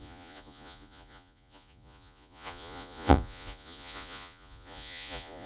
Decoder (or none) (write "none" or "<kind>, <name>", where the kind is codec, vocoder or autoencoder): vocoder, Vocos